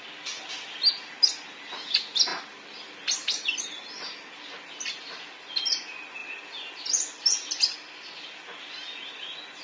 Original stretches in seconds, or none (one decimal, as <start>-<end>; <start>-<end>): 0.0-9.6